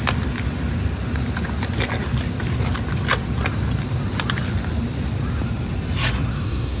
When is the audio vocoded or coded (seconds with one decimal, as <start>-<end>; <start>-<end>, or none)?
6.3-6.8